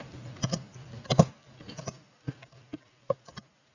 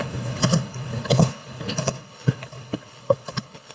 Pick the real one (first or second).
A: first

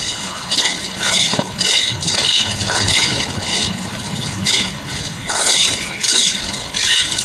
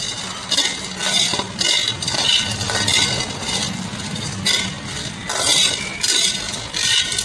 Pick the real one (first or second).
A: second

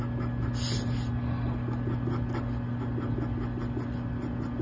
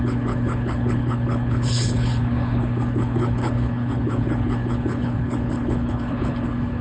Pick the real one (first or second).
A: first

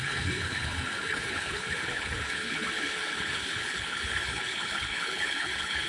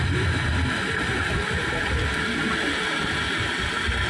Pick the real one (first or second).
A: second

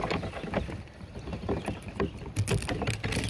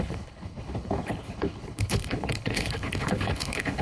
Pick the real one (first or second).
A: first